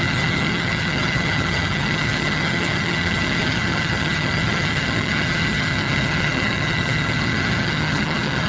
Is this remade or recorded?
remade